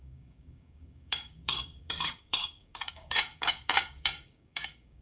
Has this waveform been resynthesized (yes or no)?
yes